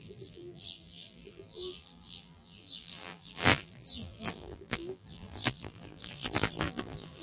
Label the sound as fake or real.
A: fake